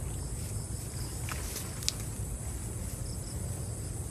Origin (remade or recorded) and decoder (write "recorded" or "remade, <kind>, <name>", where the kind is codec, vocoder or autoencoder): recorded